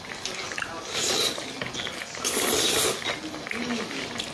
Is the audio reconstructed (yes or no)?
no